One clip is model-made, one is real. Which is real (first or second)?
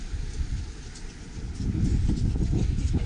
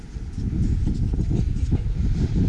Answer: second